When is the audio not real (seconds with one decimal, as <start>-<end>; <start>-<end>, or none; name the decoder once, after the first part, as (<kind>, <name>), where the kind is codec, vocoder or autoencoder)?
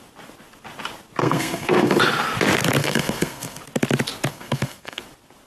1.2-2.0 (codec, SNAC); 2.8-3.6; 4.3-5.0